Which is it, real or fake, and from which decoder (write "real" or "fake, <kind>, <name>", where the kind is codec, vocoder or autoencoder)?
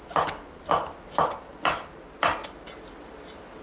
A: real